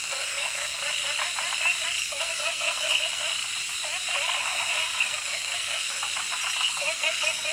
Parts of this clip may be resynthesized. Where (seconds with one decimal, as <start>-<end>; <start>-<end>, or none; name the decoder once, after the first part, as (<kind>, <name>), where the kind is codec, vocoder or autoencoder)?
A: 0.0-0.8 (codec, SNAC); 2.0-3.2; 4.4-6.0; 6.7-7.5